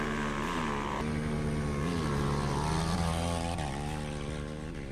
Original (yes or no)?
yes